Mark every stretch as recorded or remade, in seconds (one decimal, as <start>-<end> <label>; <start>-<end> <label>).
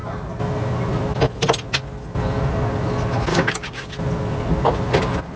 0.0-3.3 recorded; 3.3-3.9 remade; 3.9-5.4 recorded